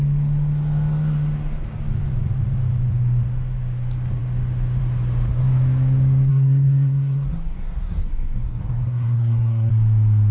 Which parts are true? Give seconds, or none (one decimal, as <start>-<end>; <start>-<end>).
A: 0.0-6.3; 9.7-10.3